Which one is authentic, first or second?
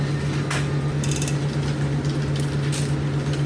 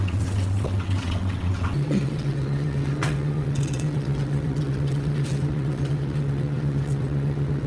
first